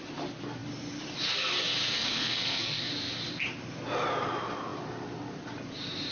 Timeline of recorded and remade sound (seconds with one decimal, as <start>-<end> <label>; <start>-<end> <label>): 0.0-1.9 recorded; 1.9-2.8 remade; 2.8-6.1 recorded